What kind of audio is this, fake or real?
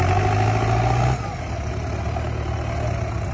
real